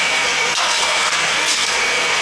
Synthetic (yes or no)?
yes